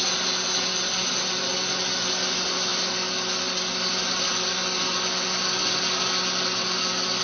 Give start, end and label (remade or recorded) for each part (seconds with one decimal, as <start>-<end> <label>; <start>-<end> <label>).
0.0-7.2 recorded